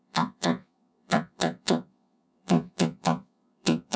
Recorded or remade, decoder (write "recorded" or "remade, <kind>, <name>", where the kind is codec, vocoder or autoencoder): remade, vocoder, Vocos